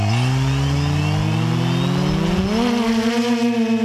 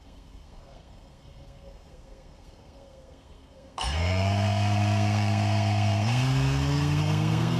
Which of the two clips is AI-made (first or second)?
second